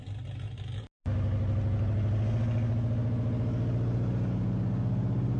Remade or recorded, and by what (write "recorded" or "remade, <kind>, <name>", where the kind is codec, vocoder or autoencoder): recorded